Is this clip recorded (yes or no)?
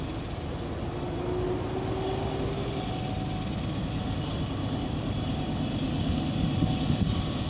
yes